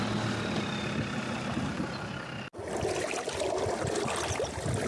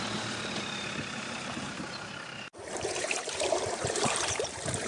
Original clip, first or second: first